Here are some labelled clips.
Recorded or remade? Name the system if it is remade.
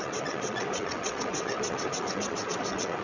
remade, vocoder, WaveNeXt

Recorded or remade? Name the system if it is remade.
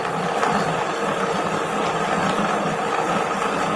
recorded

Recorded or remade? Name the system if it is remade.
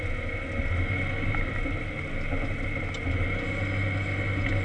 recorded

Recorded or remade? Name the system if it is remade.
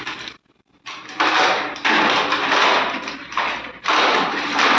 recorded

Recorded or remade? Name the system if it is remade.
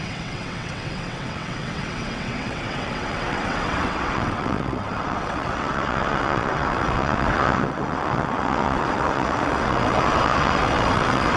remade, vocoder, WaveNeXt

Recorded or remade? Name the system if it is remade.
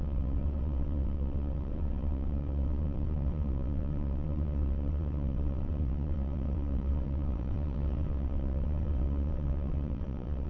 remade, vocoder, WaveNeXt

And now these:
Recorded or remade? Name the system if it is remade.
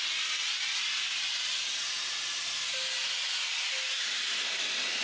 recorded